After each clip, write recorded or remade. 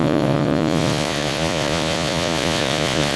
remade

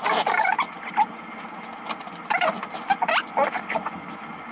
recorded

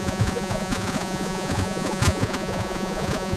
remade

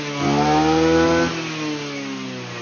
recorded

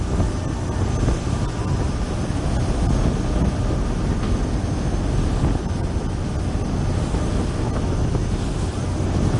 recorded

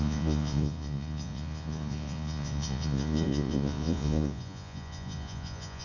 remade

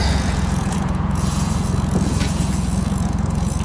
remade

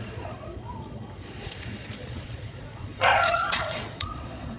remade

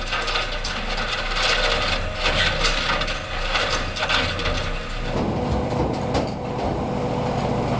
recorded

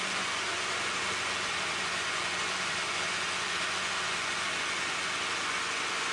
remade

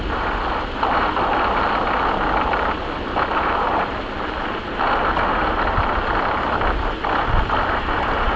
recorded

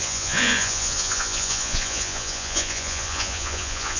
remade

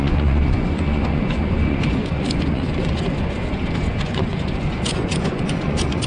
remade